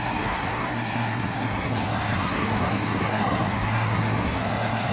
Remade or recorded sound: remade